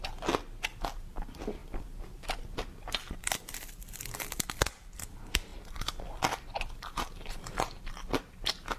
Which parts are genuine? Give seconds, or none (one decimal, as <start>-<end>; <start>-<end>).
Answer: 0.0-1.6; 4.9-5.5; 7.8-8.8

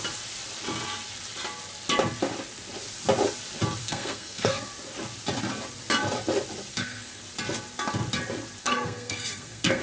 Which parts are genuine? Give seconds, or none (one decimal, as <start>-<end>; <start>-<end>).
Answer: 0.0-3.8; 4.7-6.7; 7.2-8.6